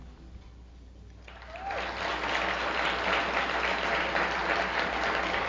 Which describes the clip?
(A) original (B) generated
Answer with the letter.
A